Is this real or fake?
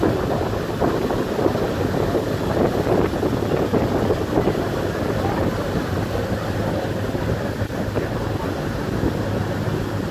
real